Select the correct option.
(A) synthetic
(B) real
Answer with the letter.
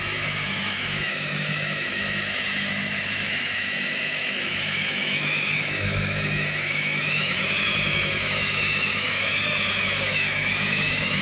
A